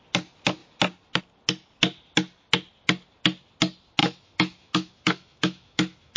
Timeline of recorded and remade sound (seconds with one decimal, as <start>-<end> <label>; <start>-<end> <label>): 0.0-4.0 recorded; 4.0-6.2 remade